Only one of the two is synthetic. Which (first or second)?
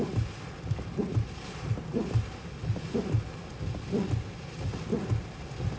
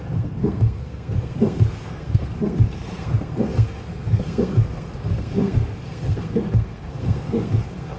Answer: second